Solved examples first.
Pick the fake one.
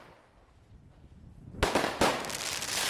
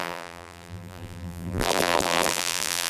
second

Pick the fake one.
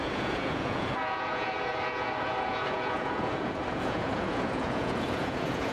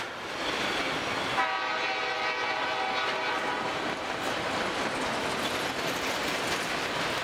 first